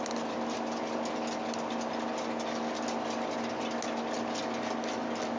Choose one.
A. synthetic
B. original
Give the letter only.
B